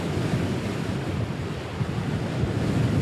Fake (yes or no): no